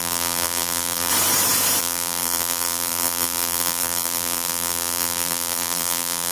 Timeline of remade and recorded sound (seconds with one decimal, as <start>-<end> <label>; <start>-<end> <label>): 0.0-1.1 remade; 1.1-1.8 recorded; 1.8-6.3 remade